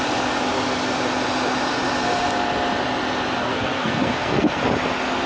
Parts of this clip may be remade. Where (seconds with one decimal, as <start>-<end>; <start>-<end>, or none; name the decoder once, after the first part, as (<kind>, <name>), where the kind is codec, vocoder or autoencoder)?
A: 3.4-4.6 (codec, SNAC)